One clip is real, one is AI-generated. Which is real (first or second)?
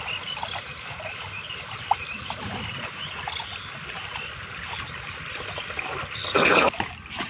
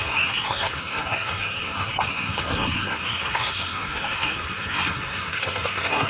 first